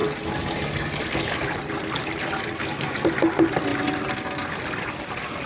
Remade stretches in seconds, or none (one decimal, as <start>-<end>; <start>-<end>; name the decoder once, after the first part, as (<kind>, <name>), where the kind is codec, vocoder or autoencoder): none